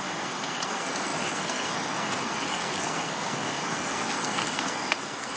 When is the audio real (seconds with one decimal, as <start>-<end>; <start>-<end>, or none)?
none